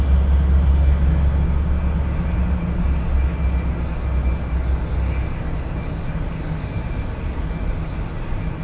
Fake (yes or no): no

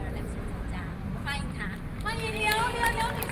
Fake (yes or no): no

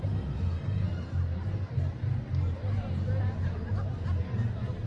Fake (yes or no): no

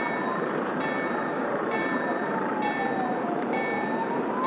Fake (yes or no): yes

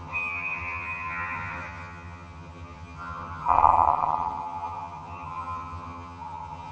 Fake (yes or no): yes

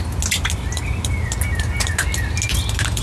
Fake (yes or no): no